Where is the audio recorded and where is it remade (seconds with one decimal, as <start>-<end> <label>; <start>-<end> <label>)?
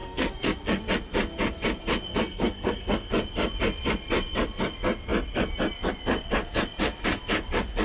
0.0-0.8 remade; 0.8-2.1 recorded; 2.1-3.1 remade; 3.1-7.8 recorded